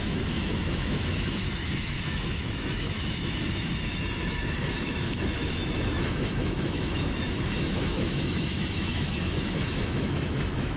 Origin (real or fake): fake